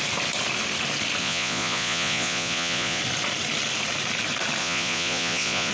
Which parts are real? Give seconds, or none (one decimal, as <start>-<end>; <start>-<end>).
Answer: 0.0-1.2; 3.0-4.6